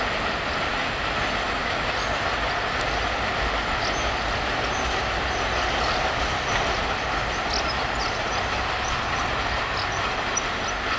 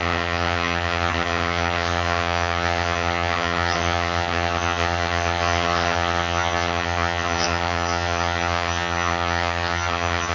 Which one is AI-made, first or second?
second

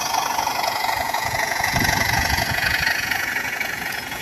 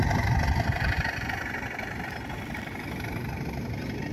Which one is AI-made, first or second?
first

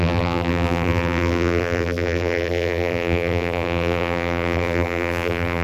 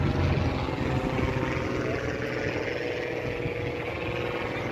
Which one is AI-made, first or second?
first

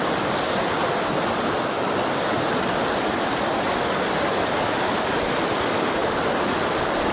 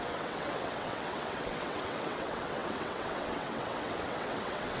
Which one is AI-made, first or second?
second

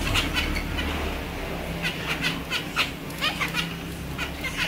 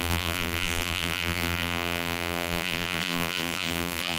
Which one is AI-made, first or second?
second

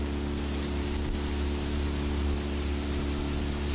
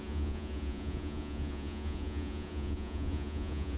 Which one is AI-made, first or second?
second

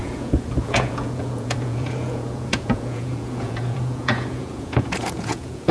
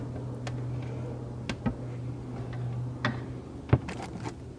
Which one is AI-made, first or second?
first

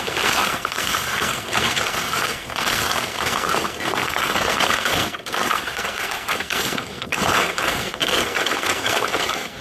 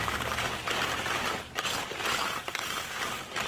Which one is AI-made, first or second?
first